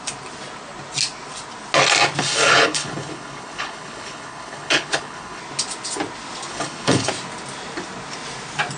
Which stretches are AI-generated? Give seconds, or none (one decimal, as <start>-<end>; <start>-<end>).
2.2-5.4; 6.5-7.1